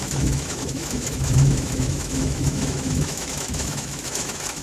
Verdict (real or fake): fake